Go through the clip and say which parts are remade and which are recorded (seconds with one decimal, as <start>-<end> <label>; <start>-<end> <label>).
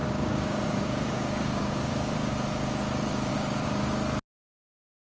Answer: 0.0-2.3 remade; 2.3-3.3 recorded; 3.3-3.9 remade; 3.9-5.1 recorded